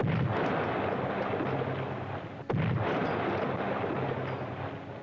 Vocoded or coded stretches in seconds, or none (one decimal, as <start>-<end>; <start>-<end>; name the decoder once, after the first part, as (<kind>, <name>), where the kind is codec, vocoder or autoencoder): none